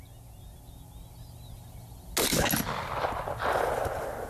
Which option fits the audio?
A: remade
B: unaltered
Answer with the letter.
B